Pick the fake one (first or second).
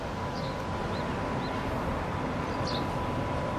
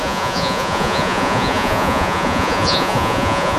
second